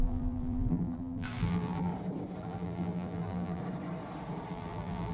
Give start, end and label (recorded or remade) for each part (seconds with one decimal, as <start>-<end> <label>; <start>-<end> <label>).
0.0-1.9 remade; 1.9-2.4 recorded; 2.4-3.6 remade; 3.6-4.5 recorded; 4.5-5.1 remade